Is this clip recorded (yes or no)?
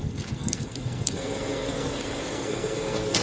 no